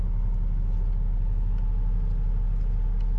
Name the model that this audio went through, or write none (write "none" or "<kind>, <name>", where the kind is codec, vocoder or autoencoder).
none